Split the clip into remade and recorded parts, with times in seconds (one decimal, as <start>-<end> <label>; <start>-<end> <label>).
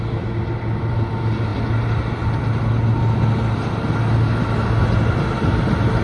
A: 0.0-6.0 recorded